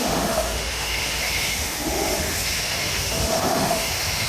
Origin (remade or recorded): remade